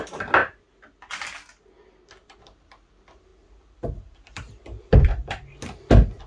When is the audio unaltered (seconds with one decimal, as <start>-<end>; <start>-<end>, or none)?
0.0-3.3; 5.6-6.3